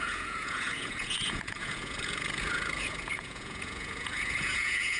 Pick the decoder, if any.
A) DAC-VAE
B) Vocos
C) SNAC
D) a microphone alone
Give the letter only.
B